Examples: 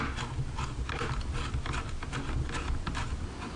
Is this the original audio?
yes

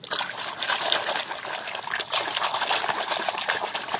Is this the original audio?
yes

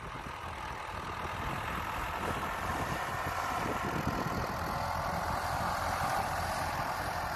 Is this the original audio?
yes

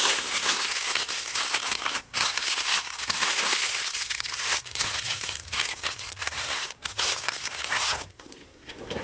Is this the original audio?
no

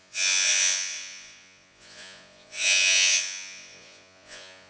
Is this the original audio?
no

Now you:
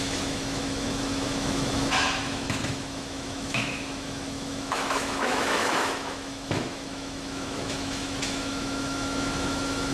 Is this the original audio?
no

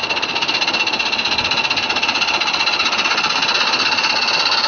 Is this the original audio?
yes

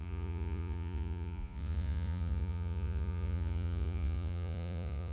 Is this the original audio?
no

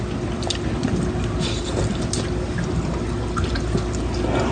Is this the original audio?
yes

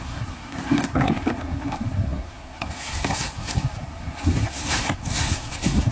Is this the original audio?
no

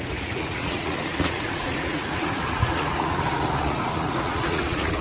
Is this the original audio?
no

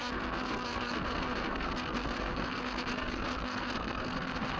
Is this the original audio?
no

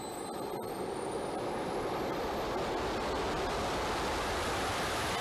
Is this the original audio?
yes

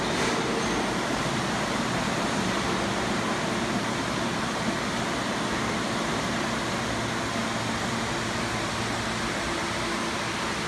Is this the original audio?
yes